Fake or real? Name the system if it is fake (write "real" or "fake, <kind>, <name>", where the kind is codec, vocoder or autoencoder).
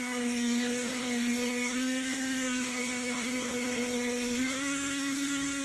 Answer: fake, codec, SNAC